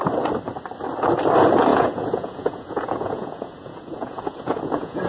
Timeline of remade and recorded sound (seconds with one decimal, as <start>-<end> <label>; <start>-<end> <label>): 0.0-1.7 recorded; 1.7-5.1 remade

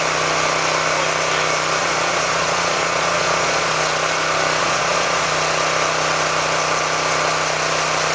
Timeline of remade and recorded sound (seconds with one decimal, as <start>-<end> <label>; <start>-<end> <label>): 0.0-1.8 recorded; 1.8-3.7 remade; 3.7-4.6 recorded; 4.6-5.3 remade; 5.3-8.1 recorded

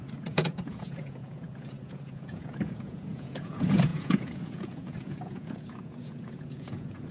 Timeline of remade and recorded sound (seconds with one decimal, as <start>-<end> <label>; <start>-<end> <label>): 0.0-7.1 remade

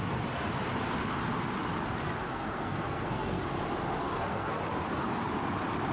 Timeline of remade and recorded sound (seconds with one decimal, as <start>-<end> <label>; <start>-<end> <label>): 0.0-2.2 recorded; 2.2-3.4 remade; 3.4-4.0 recorded; 4.0-4.6 remade; 4.6-5.9 recorded

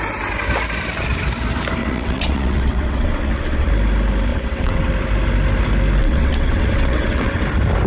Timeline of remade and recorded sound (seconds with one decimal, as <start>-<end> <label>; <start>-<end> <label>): 0.0-1.8 recorded; 1.8-3.7 remade; 3.7-4.3 recorded; 4.3-4.9 remade; 4.9-6.0 recorded; 6.0-7.4 remade; 7.4-7.9 recorded